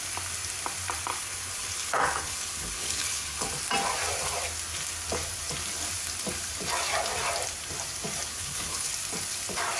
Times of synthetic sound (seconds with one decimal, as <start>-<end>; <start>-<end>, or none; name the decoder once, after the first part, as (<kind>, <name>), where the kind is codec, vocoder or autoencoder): 1.1-3.5 (codec, HILCodec); 8.3-8.9